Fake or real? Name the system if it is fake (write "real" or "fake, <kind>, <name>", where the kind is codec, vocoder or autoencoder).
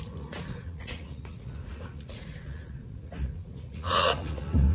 fake, vocoder, Vocos